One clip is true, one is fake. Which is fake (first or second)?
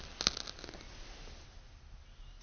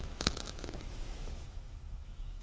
second